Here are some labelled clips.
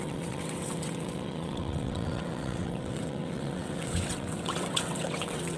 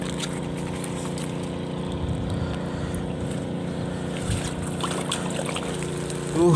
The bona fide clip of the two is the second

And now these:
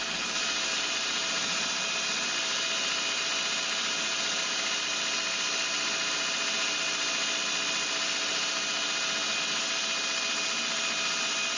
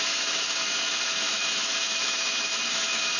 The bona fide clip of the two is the first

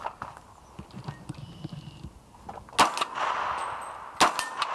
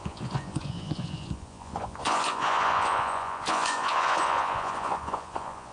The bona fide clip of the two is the first